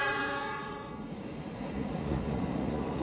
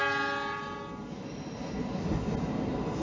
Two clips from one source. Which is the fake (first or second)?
first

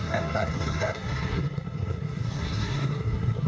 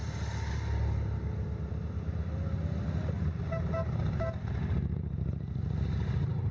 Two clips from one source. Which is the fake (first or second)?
first